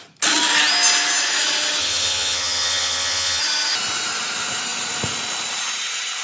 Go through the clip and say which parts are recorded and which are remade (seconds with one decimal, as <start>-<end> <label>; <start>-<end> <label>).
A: 0.0-1.8 recorded; 1.8-3.4 remade; 3.4-6.2 recorded